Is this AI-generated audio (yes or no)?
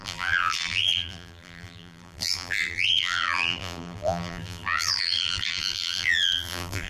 yes